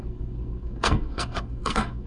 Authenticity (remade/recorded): remade